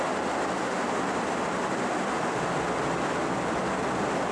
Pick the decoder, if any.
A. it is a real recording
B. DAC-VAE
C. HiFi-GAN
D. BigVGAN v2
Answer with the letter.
A